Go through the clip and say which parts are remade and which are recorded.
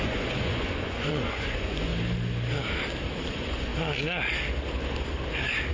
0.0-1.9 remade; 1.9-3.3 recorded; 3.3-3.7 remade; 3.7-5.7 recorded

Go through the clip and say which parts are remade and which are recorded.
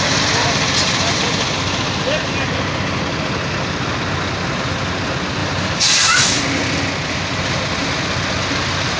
0.0-5.4 recorded; 5.4-6.4 remade; 6.4-9.0 recorded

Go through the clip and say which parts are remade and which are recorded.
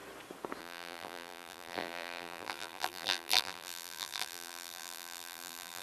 0.0-0.6 recorded; 0.6-5.8 remade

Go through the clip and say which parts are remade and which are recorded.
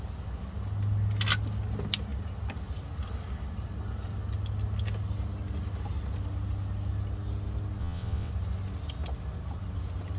0.0-7.8 recorded; 7.8-8.3 remade; 8.3-10.2 recorded